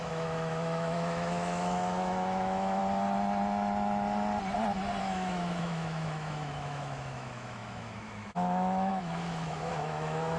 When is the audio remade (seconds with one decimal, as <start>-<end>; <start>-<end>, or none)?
0.0-2.8; 5.0-10.4